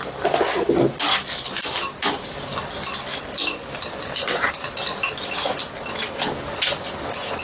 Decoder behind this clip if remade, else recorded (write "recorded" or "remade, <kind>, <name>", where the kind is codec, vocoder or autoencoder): recorded